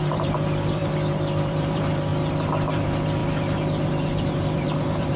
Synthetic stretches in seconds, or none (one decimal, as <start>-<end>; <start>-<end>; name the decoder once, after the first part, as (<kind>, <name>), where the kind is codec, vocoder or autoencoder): 0.0-0.8 (vocoder, BigVGAN v2); 1.4-2.1; 2.7-3.2; 4.4-5.2